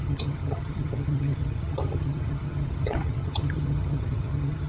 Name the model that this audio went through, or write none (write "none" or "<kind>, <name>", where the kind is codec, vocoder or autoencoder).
vocoder, HiFi-GAN